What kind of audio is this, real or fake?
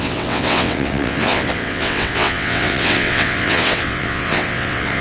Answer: fake